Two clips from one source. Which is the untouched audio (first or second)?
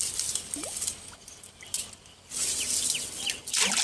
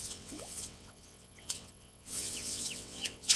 first